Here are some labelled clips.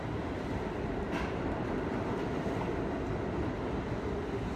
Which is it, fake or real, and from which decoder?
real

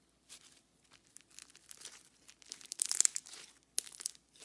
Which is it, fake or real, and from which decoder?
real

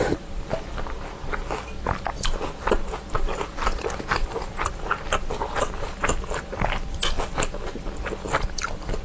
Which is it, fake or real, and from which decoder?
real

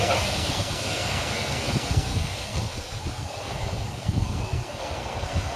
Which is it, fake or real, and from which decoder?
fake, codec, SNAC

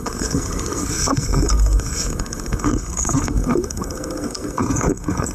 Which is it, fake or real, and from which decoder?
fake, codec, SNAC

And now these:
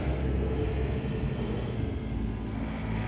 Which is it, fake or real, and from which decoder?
fake, codec, SNAC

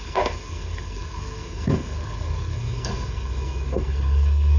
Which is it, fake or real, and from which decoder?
fake, codec, SNAC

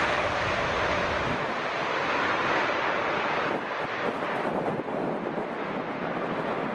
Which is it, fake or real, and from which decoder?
real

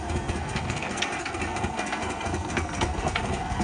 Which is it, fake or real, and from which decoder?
fake, codec, SNAC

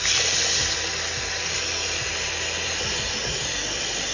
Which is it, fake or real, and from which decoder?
real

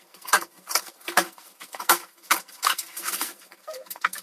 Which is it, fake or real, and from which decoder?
fake, codec, SNAC